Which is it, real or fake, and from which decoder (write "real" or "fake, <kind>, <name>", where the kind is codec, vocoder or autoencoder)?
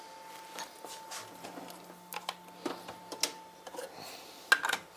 real